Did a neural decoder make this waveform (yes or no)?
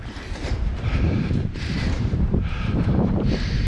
yes